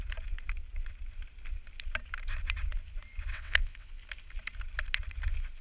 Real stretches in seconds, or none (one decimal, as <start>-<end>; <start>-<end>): 0.0-3.3; 3.9-5.6